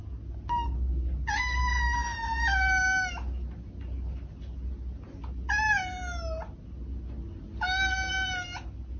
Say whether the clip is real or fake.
real